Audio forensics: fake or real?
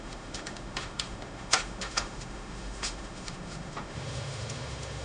fake